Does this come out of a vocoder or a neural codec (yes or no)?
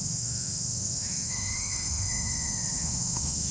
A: yes